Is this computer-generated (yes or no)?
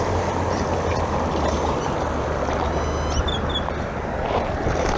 no